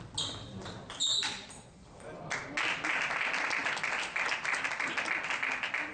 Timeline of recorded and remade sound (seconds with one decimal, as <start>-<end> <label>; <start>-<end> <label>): 0.0-5.9 recorded